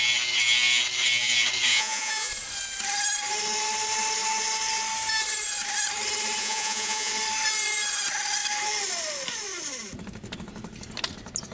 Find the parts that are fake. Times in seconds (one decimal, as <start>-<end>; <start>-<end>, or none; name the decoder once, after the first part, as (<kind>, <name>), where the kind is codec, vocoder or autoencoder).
1.7-2.3 (vocoder, Vocos); 6.4-7.1